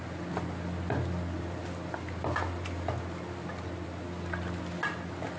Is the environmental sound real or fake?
real